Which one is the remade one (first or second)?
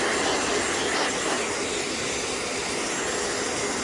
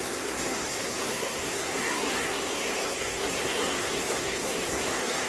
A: second